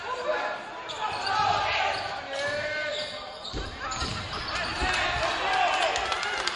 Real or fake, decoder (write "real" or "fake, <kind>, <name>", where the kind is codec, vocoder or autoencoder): real